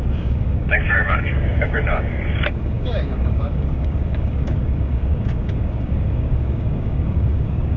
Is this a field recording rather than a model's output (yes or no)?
no